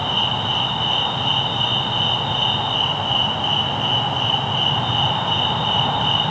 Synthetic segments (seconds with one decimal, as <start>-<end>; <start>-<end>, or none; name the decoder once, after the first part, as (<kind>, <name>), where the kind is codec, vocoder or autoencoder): none